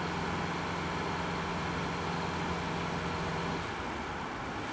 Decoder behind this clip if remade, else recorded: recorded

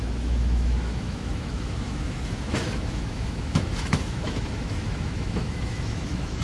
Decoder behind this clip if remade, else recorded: remade, autoencoder, DAC-VAE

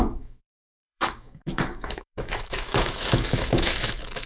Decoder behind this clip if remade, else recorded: remade, autoencoder, DAC-VAE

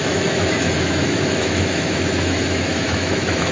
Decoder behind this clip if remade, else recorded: remade, autoencoder, DAC-VAE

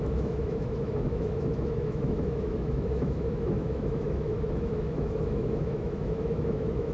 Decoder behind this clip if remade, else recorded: remade, autoencoder, DAC-VAE